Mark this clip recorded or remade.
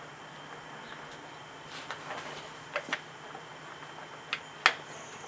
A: recorded